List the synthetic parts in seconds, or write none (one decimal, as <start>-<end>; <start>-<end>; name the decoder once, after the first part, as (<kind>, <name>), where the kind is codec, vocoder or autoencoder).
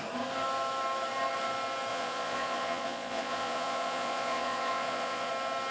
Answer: 1.9-5.3 (vocoder, Vocos)